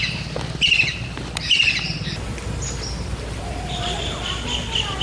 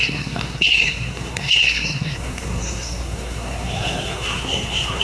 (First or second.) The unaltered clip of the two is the first